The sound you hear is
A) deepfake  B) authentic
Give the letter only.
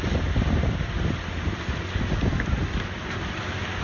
B